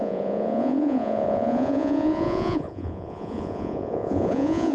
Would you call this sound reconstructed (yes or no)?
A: yes